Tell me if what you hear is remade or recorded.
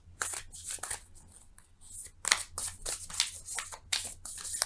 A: recorded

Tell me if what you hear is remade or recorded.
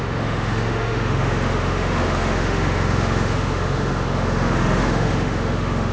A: remade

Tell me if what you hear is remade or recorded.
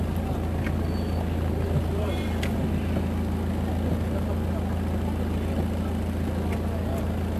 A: recorded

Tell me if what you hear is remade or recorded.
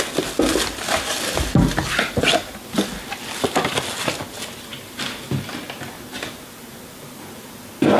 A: recorded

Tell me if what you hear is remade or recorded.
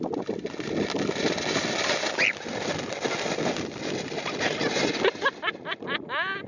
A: recorded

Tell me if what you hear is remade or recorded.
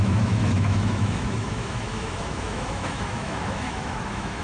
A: remade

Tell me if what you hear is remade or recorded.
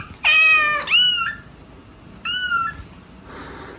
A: recorded